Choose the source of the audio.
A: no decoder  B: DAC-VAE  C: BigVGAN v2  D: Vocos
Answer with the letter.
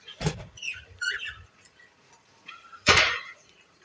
D